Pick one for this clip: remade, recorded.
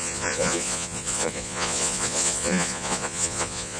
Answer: remade